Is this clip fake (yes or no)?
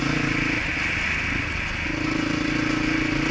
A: no